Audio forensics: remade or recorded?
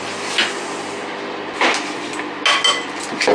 recorded